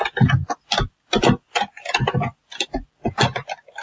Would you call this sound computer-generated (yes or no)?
no